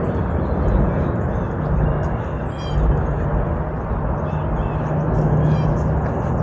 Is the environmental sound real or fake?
real